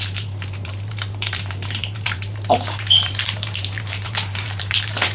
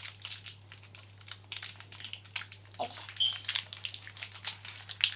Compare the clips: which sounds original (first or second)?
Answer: second